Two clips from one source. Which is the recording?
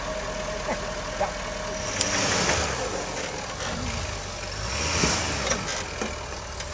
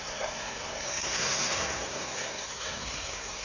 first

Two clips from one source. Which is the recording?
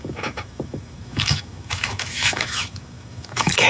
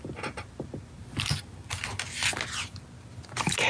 second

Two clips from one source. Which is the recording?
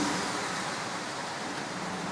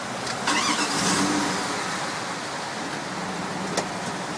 second